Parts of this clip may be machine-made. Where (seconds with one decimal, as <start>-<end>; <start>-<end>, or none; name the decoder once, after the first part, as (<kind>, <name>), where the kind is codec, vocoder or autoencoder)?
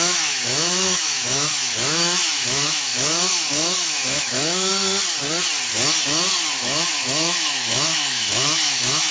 0.0-4.7 (autoencoder, DAC-VAE); 6.6-9.1